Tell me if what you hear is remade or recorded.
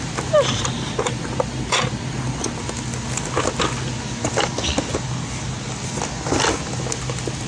recorded